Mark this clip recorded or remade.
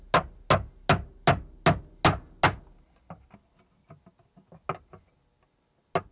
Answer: recorded